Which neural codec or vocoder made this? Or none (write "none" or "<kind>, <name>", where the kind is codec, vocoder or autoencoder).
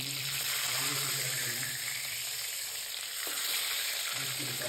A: vocoder, BigVGAN v2